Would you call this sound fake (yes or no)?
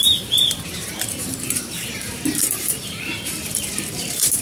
yes